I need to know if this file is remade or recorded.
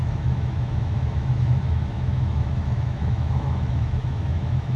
remade